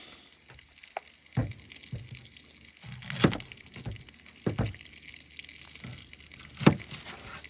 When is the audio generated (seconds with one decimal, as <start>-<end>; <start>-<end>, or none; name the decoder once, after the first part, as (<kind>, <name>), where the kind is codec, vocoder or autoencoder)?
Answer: none